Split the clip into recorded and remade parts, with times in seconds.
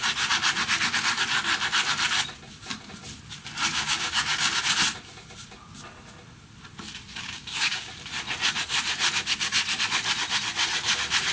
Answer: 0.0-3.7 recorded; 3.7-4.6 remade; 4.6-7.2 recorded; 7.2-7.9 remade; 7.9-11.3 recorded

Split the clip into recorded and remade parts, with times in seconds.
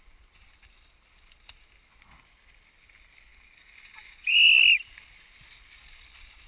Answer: 0.0-3.3 recorded; 3.3-4.6 remade; 4.6-6.5 recorded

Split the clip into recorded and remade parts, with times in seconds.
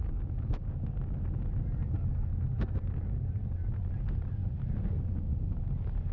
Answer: 0.0-6.1 recorded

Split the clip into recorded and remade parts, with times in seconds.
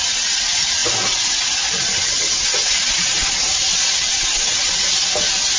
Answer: 0.0-5.6 recorded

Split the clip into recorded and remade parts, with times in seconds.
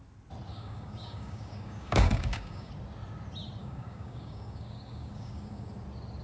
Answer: 0.0-0.5 recorded; 0.5-2.7 remade; 2.7-3.6 recorded; 3.6-5.7 remade; 5.7-6.2 recorded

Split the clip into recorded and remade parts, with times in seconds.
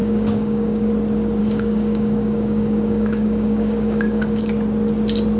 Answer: 0.0-0.9 remade; 0.9-1.4 recorded; 1.4-4.4 remade; 4.4-5.4 recorded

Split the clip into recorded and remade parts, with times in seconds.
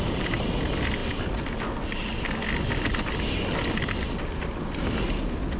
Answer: 0.0-5.6 recorded